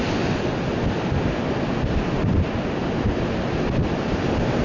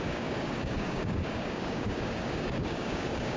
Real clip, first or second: first